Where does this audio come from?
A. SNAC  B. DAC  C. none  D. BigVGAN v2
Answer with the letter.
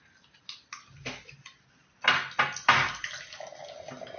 C